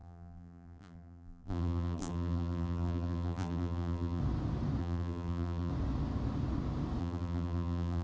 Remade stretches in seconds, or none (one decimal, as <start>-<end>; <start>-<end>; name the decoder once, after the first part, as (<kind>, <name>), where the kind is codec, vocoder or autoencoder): 0.0-4.2 (vocoder, BigVGAN v2); 4.8-5.7; 7.0-8.0